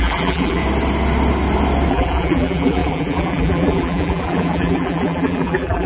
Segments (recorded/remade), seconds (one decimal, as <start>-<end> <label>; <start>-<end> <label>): 0.0-0.6 remade; 0.6-1.9 recorded; 1.9-5.9 remade